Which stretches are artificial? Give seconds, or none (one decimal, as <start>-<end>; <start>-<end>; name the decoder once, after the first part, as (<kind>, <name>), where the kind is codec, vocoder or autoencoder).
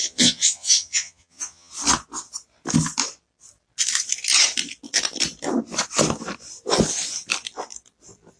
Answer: 0.0-1.7 (vocoder, Vocos)